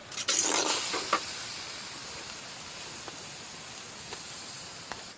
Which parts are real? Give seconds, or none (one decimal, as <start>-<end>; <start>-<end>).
0.0-5.2